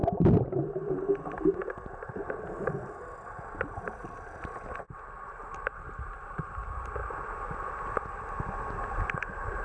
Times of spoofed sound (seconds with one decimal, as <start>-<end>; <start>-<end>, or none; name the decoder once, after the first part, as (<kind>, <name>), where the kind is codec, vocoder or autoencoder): 0.0-0.9 (vocoder, BigVGAN v2); 5.7-6.6